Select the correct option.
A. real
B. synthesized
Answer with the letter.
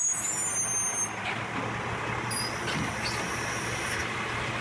A